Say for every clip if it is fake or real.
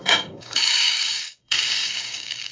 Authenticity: fake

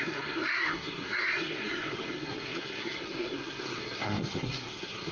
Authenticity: fake